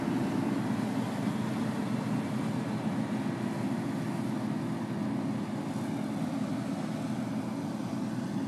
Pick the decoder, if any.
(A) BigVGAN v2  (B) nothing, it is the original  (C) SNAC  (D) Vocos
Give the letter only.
B